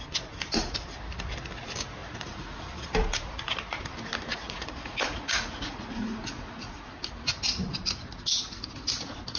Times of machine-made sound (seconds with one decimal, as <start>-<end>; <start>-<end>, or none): 2.0-2.6; 4.3-7.0